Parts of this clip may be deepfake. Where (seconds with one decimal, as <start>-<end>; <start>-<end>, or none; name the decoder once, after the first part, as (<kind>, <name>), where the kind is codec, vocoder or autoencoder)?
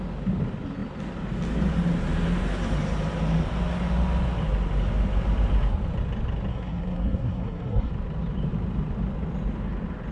6.5-7.9 (codec, SNAC)